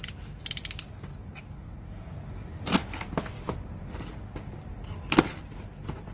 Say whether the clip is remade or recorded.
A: recorded